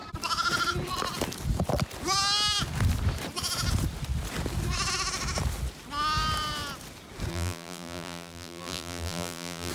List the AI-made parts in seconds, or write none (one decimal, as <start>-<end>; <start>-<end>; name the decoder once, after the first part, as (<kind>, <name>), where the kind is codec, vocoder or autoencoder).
7.3-9.7 (vocoder, BigVGAN v2)

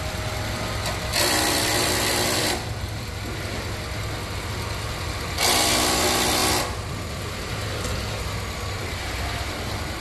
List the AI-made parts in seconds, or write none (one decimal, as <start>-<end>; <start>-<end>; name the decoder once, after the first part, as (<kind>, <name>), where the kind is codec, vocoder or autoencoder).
1.1-3.1 (vocoder, BigVGAN v2)

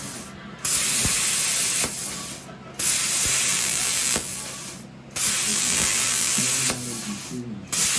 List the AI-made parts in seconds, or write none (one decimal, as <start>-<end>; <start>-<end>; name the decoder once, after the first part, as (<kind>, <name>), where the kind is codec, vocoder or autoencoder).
3.5-4.4 (vocoder, BigVGAN v2); 5.5-6.4

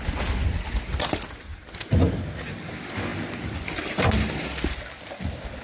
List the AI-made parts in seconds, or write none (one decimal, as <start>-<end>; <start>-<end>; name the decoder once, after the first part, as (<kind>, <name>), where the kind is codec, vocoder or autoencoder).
none

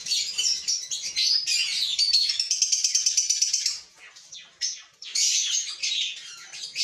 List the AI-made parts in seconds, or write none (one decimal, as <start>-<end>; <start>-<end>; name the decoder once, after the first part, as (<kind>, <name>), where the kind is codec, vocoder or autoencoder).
0.0-6.8 (vocoder, BigVGAN v2)

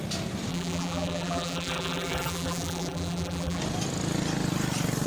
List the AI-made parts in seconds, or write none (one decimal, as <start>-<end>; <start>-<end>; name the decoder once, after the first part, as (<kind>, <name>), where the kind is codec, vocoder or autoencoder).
0.5-3.6 (vocoder, BigVGAN v2)

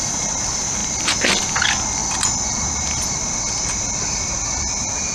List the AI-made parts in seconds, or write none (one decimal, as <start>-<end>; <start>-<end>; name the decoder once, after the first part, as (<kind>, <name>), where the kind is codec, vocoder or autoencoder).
none